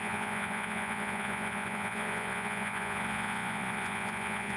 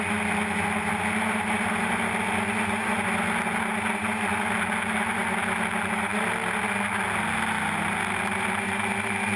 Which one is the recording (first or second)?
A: second